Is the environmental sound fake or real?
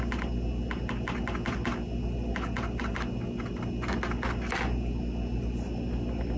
real